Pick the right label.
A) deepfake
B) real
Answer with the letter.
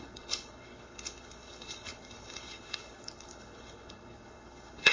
A